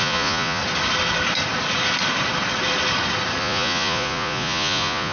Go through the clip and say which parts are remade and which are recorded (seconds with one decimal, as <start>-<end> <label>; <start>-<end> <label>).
0.0-0.6 remade; 0.6-3.4 recorded; 3.4-5.1 remade